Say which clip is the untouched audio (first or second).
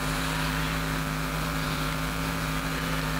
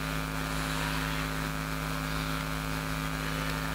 second